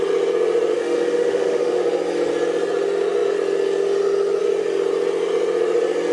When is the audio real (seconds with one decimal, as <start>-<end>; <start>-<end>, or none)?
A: 0.0-0.7; 1.8-6.1

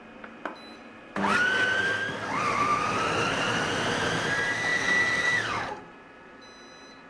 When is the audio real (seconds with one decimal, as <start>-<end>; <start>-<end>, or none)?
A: 4.7-5.7

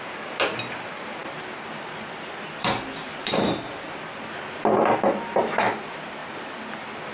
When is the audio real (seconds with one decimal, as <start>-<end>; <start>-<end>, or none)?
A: 0.0-1.2; 5.5-7.1

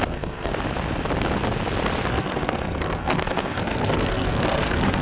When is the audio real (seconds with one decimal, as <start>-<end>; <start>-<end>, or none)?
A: 0.5-2.1